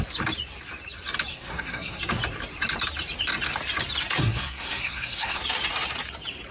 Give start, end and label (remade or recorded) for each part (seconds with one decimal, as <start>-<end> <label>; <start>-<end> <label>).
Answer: 0.0-1.3 recorded; 1.3-2.0 remade; 2.0-4.2 recorded; 4.2-5.4 remade; 5.4-6.5 recorded